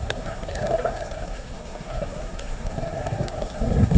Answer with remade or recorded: remade